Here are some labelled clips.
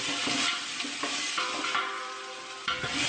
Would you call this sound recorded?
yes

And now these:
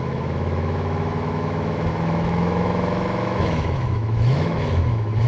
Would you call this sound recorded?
no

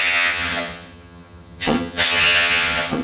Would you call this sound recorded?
no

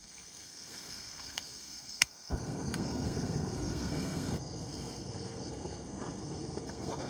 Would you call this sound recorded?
no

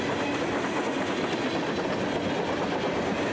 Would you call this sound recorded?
yes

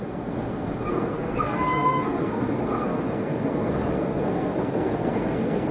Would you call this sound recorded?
no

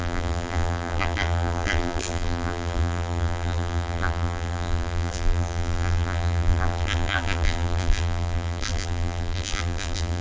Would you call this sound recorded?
no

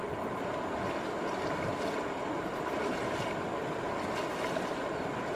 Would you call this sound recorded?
yes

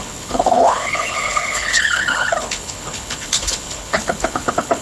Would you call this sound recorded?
no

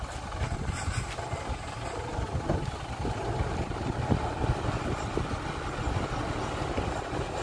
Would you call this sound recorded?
yes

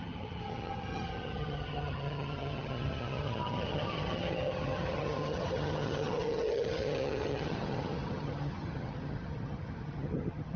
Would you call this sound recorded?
no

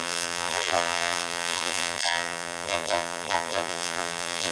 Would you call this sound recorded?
no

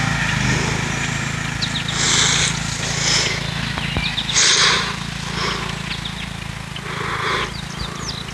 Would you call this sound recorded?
yes